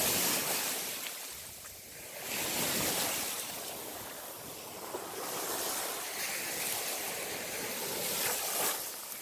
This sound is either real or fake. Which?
real